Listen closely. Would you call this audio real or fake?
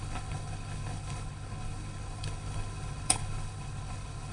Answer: fake